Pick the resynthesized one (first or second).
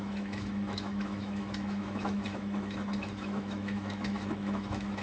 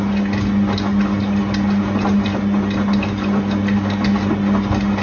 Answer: first